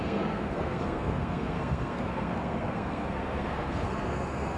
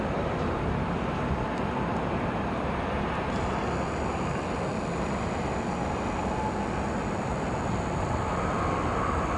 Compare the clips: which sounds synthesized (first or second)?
first